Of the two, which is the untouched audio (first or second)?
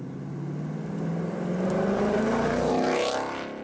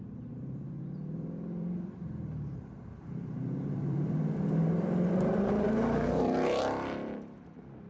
first